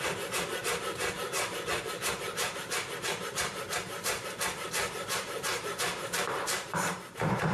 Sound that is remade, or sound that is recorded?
remade